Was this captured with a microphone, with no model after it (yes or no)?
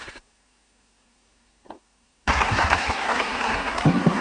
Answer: no